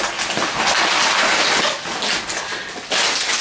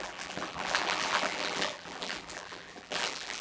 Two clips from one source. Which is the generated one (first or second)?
second